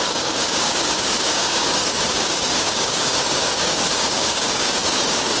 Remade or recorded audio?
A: remade